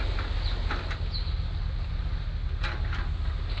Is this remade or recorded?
recorded